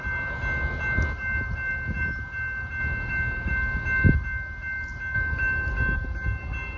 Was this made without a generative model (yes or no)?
yes